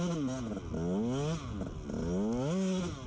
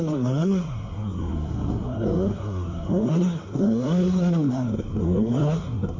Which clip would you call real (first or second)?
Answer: first